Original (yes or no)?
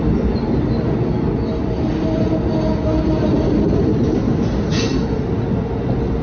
yes